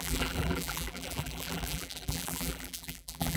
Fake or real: fake